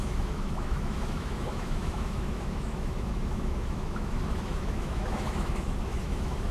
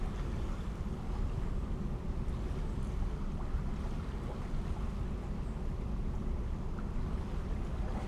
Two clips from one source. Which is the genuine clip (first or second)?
second